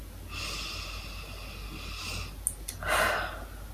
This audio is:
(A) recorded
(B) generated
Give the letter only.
A